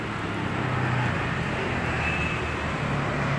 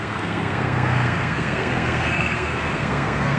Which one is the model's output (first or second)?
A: second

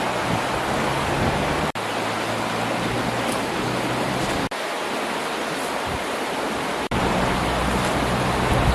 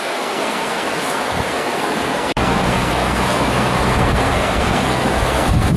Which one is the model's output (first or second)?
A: second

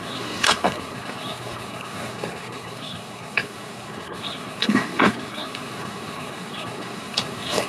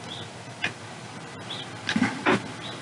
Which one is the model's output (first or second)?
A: first